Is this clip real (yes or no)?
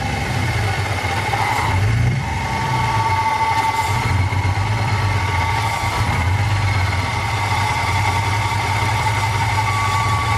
no